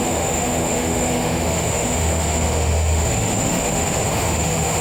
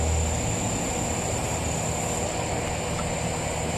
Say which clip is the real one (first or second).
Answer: second